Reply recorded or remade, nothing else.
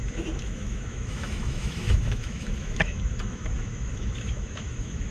remade